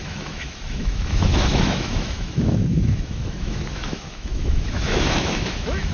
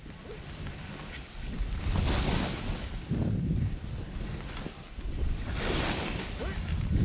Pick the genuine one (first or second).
second